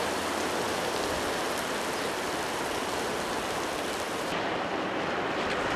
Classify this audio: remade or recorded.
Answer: recorded